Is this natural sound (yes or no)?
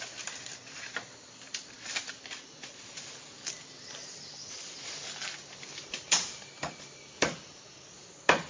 yes